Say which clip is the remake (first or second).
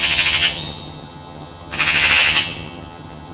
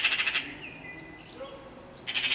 first